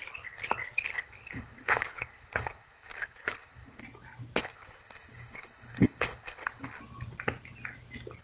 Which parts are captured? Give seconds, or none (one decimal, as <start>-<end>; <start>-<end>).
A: 3.8-4.4; 6.8-8.2